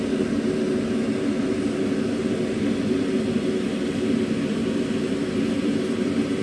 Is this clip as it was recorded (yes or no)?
yes